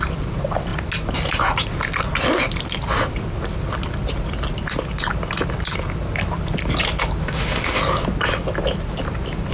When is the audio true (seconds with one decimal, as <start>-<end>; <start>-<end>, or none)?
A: 0.0-7.2; 7.8-9.5